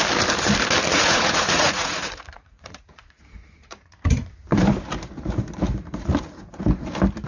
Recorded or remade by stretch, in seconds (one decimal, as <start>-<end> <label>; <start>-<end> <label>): 0.0-0.9 recorded; 0.9-4.3 remade; 4.3-7.3 recorded